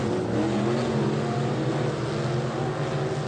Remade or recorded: recorded